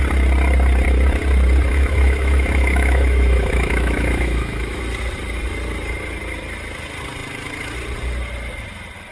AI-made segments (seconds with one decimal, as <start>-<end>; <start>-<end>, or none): 1.7-4.8